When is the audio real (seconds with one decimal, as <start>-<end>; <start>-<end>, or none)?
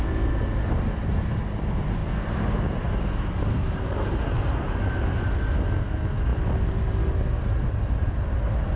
0.0-8.8